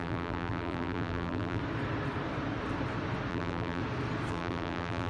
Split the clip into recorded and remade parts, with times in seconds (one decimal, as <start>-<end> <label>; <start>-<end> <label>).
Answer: 0.0-1.6 remade; 1.6-3.3 recorded; 3.3-3.8 remade; 3.8-4.3 recorded; 4.3-5.1 remade